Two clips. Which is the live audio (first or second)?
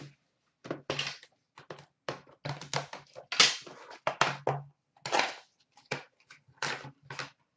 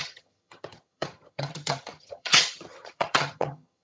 first